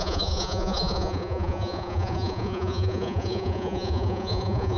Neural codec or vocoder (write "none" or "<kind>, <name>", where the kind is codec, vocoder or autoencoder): vocoder, Vocos